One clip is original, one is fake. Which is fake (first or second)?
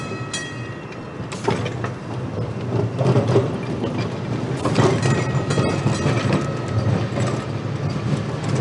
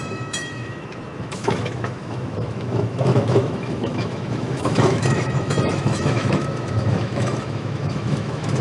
second